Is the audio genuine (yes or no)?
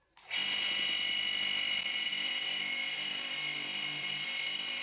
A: yes